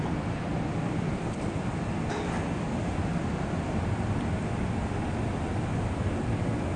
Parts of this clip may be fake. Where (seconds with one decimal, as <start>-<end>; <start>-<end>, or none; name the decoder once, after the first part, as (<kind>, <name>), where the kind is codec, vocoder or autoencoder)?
0.5-4.6 (vocoder, BigVGAN v2)